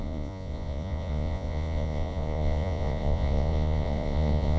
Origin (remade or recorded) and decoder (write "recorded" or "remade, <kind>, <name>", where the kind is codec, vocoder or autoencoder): remade, vocoder, Vocos